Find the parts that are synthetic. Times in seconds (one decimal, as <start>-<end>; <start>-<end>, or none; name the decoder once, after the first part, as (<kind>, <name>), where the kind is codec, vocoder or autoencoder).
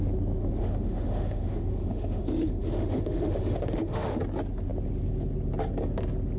0.4-4.2 (autoencoder, DAC-VAE)